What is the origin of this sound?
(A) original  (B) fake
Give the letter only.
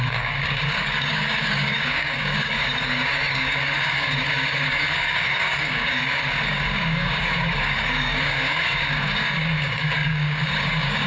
B